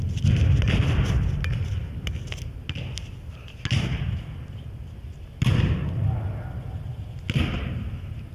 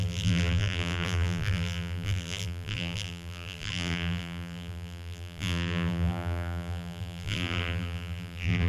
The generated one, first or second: second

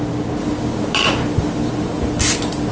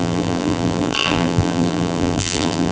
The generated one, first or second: second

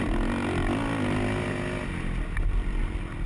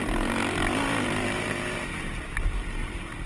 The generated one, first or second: second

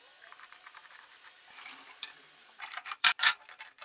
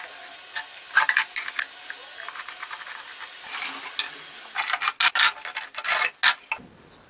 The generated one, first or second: first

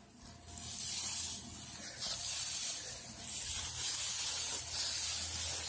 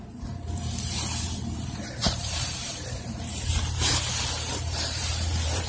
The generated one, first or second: second